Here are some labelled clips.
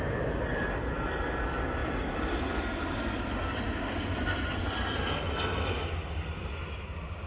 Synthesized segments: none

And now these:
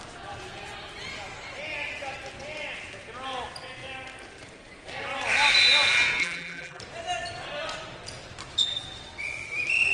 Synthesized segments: 6.2-6.8

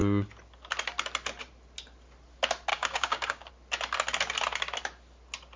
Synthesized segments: 2.7-3.5

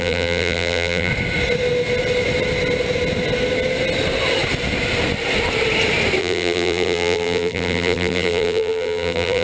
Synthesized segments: 0.0-1.1; 6.2-9.4

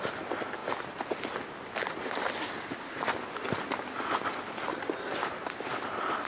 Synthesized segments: 0.0-0.6; 4.4-6.3